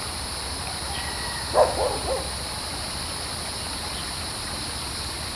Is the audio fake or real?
real